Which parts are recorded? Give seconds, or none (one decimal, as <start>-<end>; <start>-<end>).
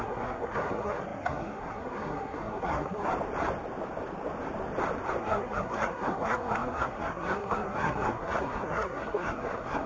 3.1-5.2